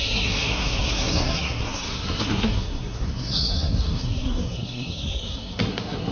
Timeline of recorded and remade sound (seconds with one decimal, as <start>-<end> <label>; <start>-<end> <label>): 0.0-6.1 remade